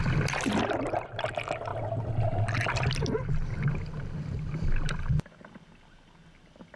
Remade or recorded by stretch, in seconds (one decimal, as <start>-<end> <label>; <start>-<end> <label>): 0.0-6.8 recorded